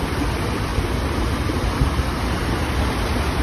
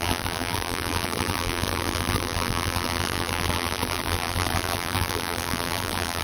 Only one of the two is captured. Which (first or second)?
first